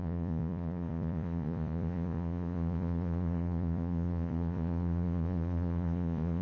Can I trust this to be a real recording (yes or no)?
no